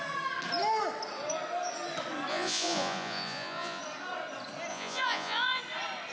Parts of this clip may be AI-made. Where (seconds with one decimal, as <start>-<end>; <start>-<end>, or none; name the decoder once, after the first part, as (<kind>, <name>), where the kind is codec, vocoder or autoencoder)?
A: 2.3-3.8 (vocoder, Vocos); 4.7-5.6